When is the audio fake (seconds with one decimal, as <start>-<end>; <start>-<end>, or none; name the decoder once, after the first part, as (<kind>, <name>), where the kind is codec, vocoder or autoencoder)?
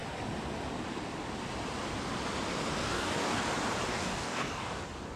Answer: 2.9-3.4 (codec, DAC); 3.9-4.8